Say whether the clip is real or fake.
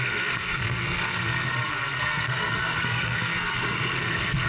fake